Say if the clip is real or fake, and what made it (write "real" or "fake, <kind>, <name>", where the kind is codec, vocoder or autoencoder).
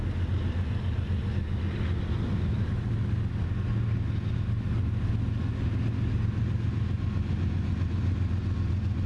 real